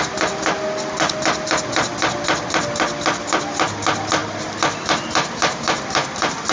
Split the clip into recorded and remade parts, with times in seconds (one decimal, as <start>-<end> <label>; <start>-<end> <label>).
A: 0.0-6.5 recorded